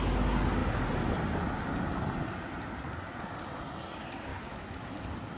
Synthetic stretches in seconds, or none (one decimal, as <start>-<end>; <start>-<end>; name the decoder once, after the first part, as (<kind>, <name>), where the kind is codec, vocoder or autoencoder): 4.3-4.9 (autoencoder, DAC-VAE)